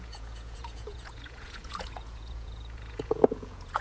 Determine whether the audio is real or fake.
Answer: fake